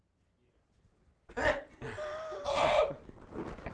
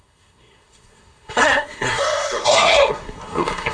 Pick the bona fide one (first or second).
first